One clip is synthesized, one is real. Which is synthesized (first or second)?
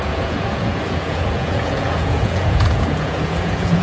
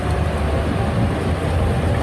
first